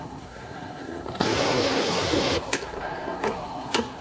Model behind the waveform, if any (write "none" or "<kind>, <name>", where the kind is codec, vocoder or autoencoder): codec, SNAC